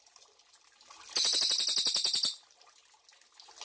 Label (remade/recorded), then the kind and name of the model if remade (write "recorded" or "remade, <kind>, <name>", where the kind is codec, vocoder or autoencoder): recorded